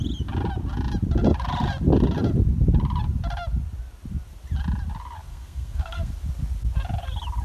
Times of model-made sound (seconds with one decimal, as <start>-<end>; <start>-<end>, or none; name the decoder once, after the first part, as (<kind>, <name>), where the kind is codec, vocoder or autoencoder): 5.3-6.1 (codec, SNAC)

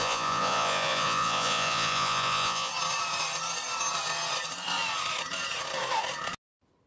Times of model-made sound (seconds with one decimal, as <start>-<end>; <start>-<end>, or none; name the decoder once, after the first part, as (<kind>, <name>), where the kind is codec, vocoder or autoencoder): 0.0-2.7 (vocoder, Vocos)

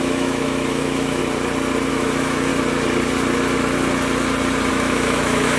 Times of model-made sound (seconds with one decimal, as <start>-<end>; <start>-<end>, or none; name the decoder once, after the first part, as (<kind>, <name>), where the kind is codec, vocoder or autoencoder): 0.0-1.2 (autoencoder, DAC-VAE); 1.9-2.5; 4.7-5.6

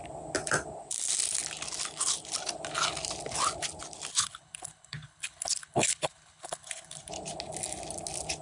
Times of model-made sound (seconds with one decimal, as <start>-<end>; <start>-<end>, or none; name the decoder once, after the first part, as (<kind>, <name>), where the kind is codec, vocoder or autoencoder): 4.1-7.1 (codec, HILCodec)

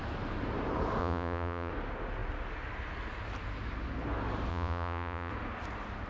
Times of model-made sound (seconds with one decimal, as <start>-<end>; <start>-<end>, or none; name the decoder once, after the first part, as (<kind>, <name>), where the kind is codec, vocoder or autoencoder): 1.0-1.7 (vocoder, Vocos); 4.5-5.3

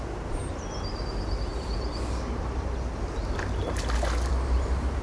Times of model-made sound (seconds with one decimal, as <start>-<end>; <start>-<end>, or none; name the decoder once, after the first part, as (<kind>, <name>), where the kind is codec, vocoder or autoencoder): none

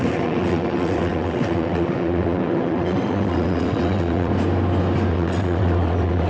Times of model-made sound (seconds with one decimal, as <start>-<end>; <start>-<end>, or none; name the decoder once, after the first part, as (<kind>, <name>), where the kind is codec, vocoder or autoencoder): 0.0-4.3 (vocoder, WaveNeXt); 5.1-6.3